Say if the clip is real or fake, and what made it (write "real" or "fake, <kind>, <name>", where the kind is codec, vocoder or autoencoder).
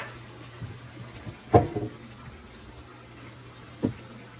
real